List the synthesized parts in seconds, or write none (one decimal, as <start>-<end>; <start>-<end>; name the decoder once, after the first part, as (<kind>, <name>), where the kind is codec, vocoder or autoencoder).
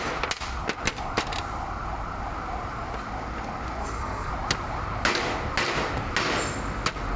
3.8-4.3 (codec, SNAC)